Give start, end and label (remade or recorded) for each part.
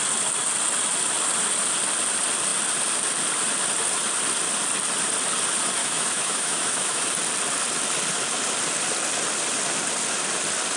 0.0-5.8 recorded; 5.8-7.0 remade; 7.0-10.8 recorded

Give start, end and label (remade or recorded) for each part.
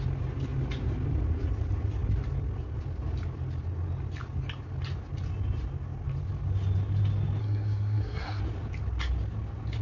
0.0-7.4 recorded; 7.4-8.4 remade; 8.4-9.8 recorded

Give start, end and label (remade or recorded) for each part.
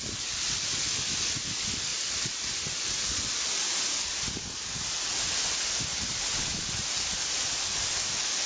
0.0-1.9 recorded; 1.9-4.8 remade; 4.8-5.9 recorded; 5.9-6.6 remade; 6.6-8.5 recorded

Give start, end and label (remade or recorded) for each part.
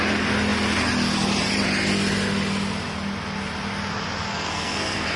0.0-4.3 recorded; 4.3-5.2 remade